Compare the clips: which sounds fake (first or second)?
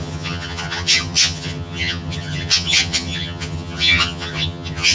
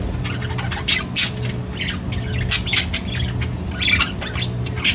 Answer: first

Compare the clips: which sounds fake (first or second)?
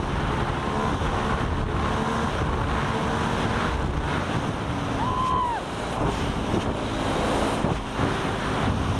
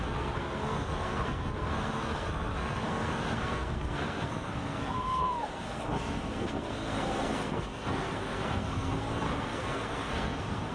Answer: second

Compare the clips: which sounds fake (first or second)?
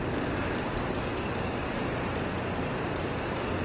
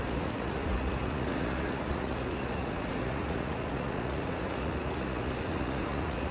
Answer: second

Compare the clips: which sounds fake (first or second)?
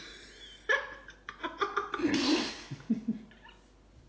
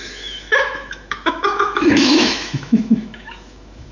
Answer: second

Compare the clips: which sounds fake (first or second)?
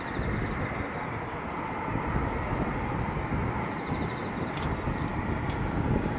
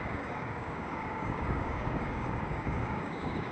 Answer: second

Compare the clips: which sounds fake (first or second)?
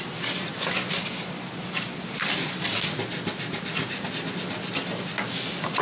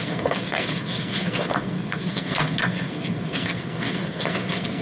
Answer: second